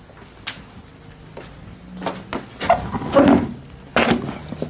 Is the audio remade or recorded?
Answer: recorded